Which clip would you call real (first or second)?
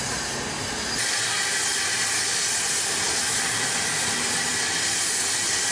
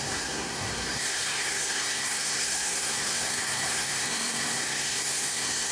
first